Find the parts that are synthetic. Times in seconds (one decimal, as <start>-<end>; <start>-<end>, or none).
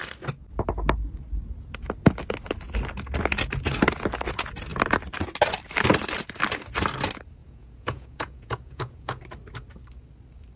7.4-9.2